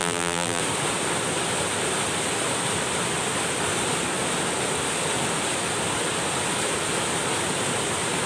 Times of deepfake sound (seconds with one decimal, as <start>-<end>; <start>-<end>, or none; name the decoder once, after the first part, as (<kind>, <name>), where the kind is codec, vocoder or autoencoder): 0.0-0.6 (vocoder, BigVGAN v2)